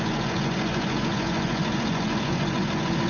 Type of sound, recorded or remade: remade